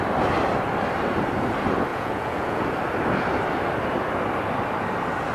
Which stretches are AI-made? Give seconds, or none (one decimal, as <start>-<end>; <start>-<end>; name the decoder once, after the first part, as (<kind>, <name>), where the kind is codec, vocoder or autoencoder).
1.9-2.6 (vocoder, Vocos)